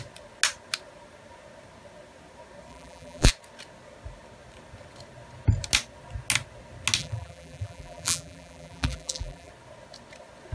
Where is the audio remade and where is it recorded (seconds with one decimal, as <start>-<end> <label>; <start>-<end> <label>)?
0.0-2.7 recorded; 2.7-3.3 remade; 3.3-7.0 recorded; 7.0-9.5 remade; 9.5-10.5 recorded